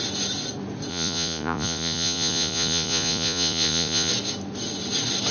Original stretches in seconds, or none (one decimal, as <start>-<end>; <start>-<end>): 0.0-0.9; 4.1-5.3